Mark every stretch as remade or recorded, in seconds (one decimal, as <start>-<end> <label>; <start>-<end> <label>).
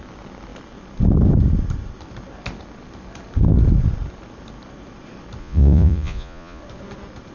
0.0-5.4 recorded; 5.4-6.6 remade; 6.6-7.3 recorded